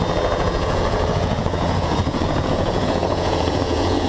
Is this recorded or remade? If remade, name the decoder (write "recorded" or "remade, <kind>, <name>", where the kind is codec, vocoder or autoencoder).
remade, vocoder, Vocos